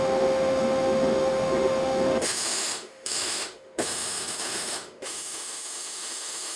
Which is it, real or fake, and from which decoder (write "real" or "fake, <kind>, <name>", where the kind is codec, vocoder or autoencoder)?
fake, autoencoder, DAC-VAE